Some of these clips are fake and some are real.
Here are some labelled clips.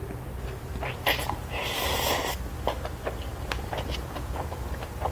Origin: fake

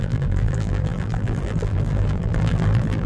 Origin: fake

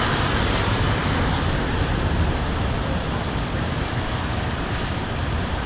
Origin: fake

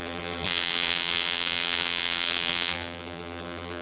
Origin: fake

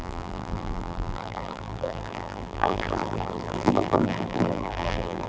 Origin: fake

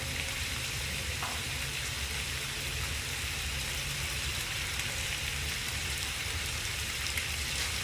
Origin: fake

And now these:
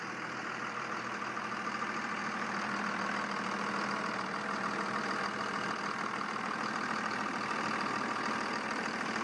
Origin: fake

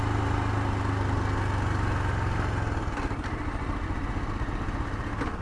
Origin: real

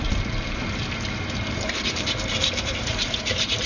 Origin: fake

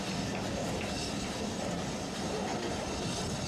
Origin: real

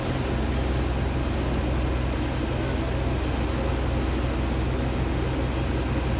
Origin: real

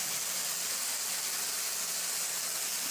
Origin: real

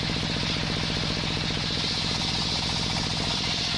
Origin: fake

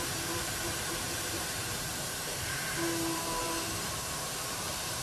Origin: fake